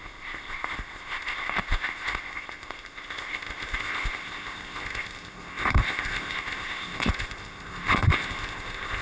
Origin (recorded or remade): remade